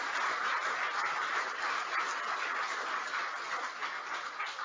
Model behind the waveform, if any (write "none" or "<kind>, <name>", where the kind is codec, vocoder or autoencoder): none